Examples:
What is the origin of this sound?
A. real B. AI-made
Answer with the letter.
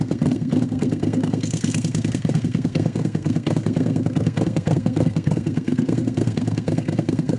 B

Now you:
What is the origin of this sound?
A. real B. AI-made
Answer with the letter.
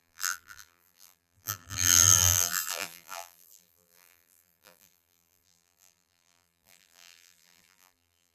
B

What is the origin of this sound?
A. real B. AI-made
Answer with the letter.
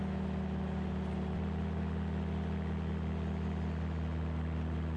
A